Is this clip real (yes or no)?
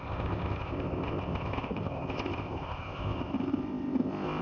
no